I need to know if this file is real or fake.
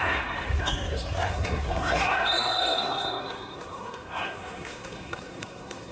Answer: fake